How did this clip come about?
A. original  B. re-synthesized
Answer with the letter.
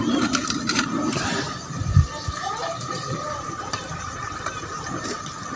B